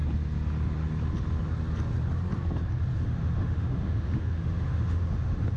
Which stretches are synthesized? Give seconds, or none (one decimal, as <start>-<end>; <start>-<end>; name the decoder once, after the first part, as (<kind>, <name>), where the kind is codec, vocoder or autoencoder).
3.0-5.6 (autoencoder, DAC-VAE)